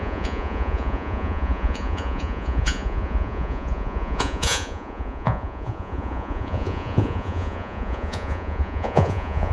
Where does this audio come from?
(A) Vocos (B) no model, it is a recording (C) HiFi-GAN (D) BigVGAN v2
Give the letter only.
A